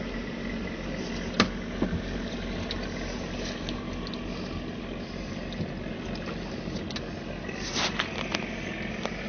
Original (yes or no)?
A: yes